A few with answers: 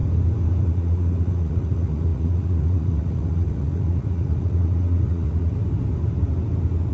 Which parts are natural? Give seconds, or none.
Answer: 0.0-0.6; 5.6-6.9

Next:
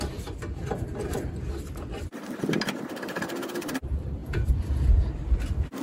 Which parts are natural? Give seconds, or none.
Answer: 0.0-4.2; 5.1-5.8

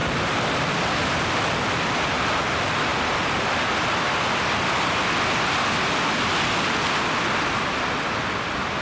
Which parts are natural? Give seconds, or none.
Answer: 0.0-8.8

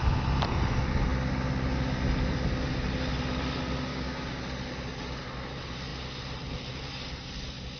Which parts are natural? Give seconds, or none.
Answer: 0.0-3.9; 4.4-7.8

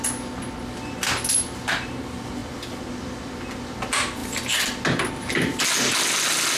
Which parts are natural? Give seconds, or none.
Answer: 0.0-6.6

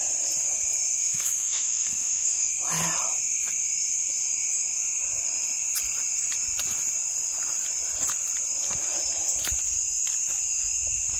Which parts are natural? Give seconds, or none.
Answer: 0.0-1.0; 2.5-11.2

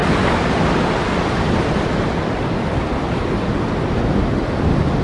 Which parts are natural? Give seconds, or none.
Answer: 0.0-5.0